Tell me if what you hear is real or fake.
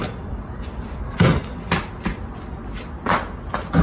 real